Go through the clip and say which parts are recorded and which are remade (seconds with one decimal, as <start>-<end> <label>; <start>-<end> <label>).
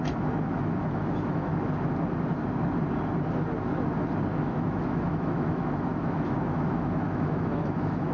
0.0-1.5 remade; 1.5-4.4 recorded; 4.4-8.1 remade